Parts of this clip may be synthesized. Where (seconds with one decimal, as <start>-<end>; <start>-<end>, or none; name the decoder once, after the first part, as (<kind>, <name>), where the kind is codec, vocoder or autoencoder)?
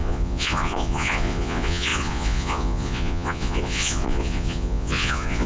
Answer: 0.0-5.5 (vocoder, Vocos)